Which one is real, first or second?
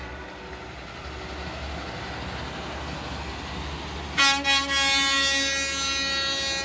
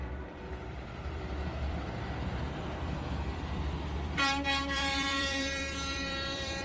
first